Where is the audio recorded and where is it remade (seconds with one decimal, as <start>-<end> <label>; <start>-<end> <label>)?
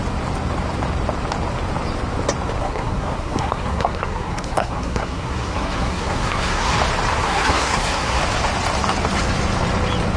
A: 0.0-2.6 recorded; 2.6-6.8 remade; 6.8-7.2 recorded; 7.2-8.2 remade; 8.2-10.2 recorded